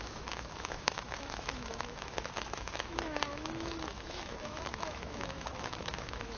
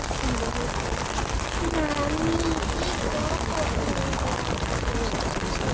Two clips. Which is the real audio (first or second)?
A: second